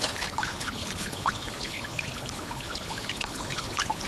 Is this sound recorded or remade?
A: remade